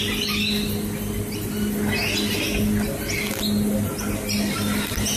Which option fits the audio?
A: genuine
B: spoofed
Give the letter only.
A